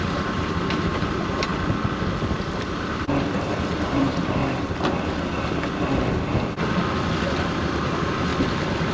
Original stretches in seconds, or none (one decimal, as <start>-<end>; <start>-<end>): 1.5-2.3; 4.4-7.5; 8.3-8.9